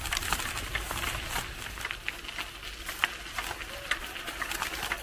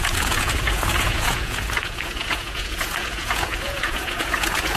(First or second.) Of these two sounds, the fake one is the second